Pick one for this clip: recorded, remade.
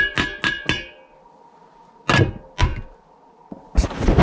recorded